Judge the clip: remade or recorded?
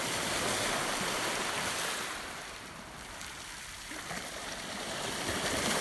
remade